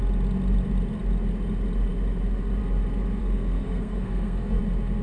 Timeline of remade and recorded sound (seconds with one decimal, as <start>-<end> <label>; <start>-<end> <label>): 0.0-3.2 recorded; 3.2-4.6 remade; 4.6-5.0 recorded